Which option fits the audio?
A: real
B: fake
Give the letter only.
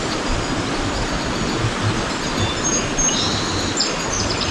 A